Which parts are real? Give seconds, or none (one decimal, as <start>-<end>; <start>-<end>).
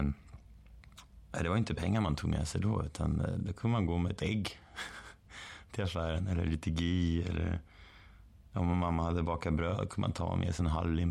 0.0-11.1